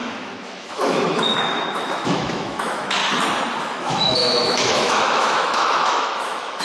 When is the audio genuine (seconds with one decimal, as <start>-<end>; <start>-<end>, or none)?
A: 3.0-3.6